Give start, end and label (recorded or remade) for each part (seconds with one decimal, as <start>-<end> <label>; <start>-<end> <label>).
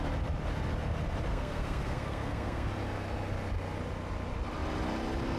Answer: 0.0-1.3 recorded; 1.3-2.7 remade; 2.7-5.4 recorded